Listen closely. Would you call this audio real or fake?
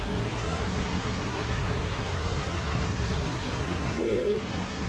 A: fake